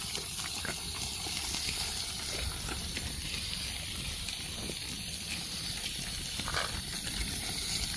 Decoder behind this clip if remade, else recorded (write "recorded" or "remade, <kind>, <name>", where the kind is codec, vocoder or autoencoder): recorded